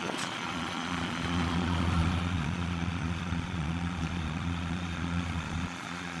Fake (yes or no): yes